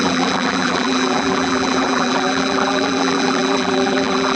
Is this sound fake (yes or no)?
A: yes